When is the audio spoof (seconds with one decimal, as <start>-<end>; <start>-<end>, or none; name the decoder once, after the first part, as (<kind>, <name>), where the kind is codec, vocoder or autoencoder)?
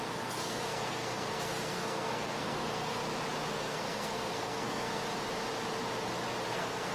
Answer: 0.0-3.0 (codec, SNAC); 3.5-5.0; 6.5-6.9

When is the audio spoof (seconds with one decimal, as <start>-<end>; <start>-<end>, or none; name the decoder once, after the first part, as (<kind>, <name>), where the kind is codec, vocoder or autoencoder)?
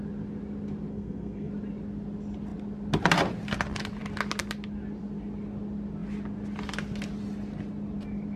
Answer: 0.9-1.5 (codec, SNAC)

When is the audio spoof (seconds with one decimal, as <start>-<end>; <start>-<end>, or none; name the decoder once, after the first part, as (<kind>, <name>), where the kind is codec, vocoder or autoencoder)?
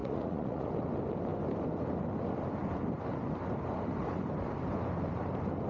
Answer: 0.0-0.7 (vocoder, Vocos)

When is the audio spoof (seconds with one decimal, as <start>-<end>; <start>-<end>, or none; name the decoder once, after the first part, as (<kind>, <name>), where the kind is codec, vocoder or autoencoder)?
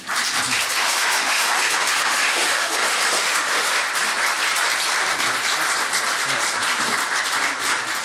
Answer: 0.8-3.8 (autoencoder, DAC-VAE)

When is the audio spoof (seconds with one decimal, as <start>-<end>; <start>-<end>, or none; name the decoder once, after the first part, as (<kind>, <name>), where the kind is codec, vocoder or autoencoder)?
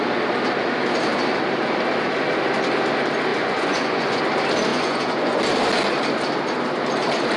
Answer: 3.3-4.2 (vocoder, Vocos); 4.7-5.4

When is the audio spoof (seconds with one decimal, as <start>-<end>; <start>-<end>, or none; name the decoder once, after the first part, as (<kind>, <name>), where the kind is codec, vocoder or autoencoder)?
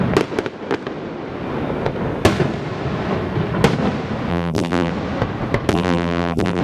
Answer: 4.3-4.9 (vocoder, BigVGAN v2); 5.7-6.6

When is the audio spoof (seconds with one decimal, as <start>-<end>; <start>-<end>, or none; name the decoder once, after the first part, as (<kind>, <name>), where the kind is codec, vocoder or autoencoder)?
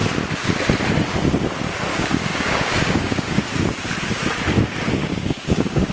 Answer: 1.9-3.4 (codec, DAC); 5.0-5.9